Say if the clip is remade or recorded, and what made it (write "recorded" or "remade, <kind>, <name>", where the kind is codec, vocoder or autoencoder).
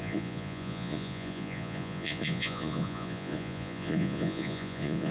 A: remade, vocoder, Vocos